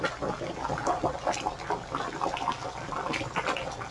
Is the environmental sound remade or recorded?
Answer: recorded